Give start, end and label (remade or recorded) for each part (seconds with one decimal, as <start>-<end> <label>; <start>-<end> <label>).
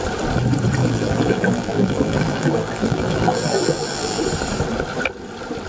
0.0-0.8 recorded; 0.8-4.2 remade; 4.2-5.7 recorded